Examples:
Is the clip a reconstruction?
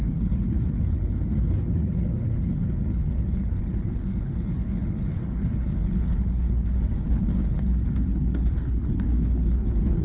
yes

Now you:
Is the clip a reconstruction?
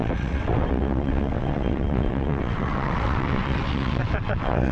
yes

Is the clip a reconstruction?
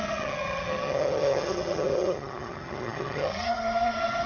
yes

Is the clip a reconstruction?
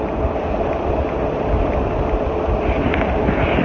yes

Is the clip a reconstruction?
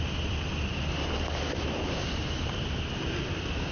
no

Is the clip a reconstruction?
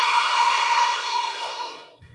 yes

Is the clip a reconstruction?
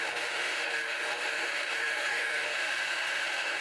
yes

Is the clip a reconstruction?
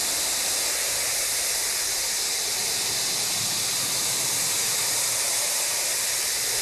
no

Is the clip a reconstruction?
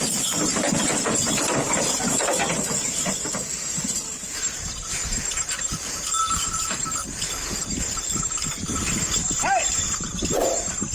yes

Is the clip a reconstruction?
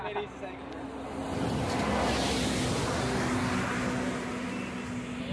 no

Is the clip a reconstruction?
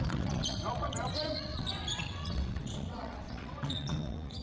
yes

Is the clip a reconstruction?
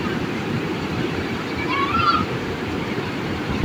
yes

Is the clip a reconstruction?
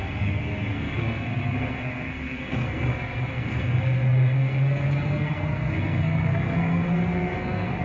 yes